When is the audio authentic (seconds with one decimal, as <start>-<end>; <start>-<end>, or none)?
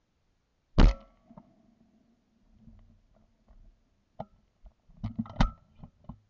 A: 0.0-6.3